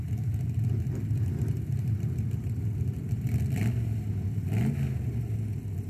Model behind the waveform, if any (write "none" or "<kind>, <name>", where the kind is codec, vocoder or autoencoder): none